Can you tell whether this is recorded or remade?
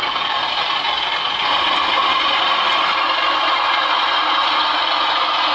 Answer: recorded